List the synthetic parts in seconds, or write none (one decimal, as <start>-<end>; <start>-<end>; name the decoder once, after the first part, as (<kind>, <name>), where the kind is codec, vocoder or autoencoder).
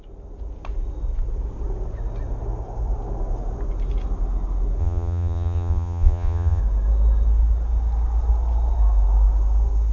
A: 4.8-6.6 (vocoder, Vocos)